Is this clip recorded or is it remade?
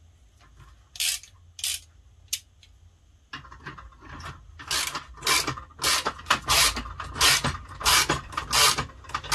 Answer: recorded